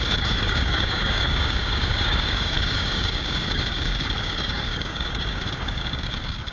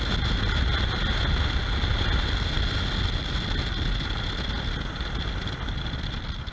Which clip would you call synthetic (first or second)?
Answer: first